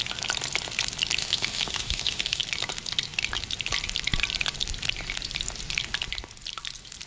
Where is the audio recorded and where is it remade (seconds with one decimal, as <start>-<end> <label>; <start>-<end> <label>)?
0.0-1.2 recorded; 1.2-2.4 remade; 2.4-7.1 recorded